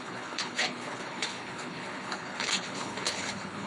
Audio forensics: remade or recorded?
remade